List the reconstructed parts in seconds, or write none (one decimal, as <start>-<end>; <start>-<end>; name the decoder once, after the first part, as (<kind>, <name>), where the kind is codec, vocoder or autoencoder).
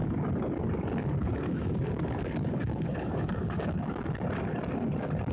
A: 1.2-4.1 (codec, DAC)